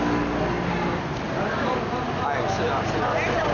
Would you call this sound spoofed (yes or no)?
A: no